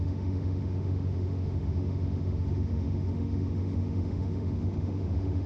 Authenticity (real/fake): fake